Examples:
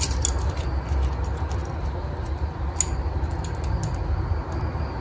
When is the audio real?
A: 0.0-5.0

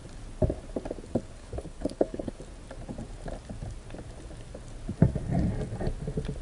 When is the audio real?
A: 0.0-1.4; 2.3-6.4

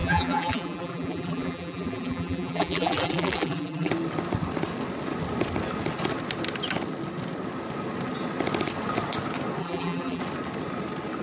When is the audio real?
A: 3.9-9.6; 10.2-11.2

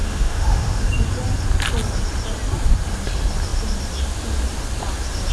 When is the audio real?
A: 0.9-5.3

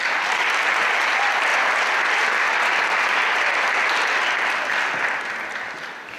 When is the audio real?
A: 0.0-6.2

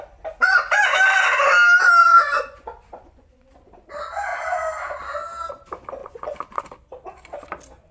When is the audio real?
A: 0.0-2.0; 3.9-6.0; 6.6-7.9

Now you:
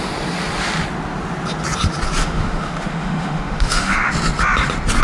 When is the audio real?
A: 0.0-2.2; 4.1-5.0